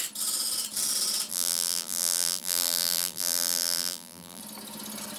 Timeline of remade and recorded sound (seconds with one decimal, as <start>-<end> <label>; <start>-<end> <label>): 0.0-1.3 recorded; 1.3-4.4 remade; 4.4-5.2 recorded